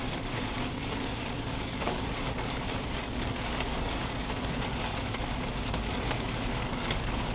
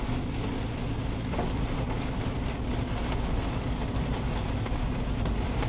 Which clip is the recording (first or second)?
second